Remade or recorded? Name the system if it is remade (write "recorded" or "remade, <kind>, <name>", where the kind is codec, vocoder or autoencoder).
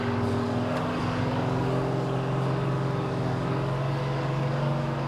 remade, codec, DAC